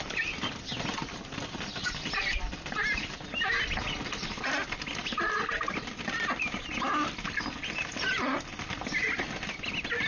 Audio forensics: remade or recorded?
recorded